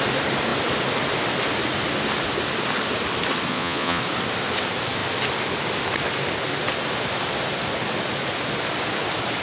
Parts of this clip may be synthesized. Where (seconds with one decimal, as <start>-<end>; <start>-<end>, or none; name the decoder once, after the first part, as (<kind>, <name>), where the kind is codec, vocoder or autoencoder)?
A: 3.5-4.0 (vocoder, Vocos)